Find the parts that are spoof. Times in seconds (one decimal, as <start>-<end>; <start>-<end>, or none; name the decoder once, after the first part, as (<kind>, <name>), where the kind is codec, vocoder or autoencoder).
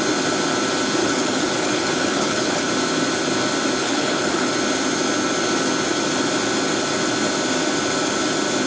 1.0-2.7 (codec, HILCodec); 3.8-4.5